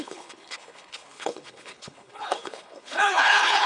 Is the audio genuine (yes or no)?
no